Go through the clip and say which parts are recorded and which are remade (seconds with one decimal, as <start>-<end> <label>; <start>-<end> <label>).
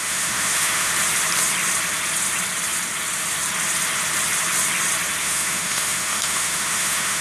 0.0-0.9 remade; 0.9-5.2 recorded; 5.2-7.2 remade